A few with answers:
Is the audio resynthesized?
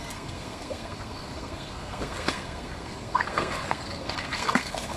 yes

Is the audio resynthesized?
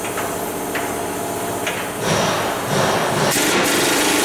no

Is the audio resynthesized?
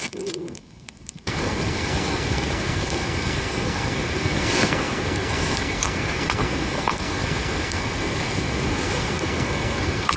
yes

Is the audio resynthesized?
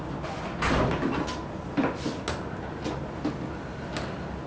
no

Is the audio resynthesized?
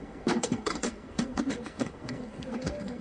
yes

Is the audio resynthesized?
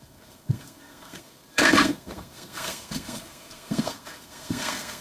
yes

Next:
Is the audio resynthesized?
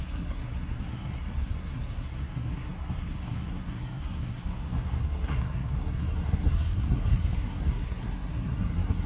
yes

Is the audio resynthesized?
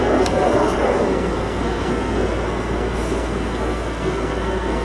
yes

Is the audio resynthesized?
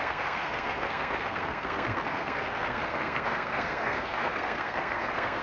yes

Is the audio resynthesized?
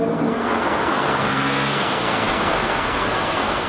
yes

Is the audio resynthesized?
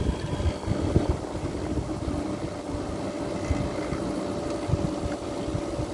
no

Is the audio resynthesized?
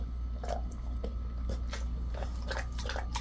no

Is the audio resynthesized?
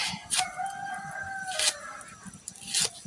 no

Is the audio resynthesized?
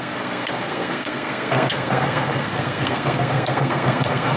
yes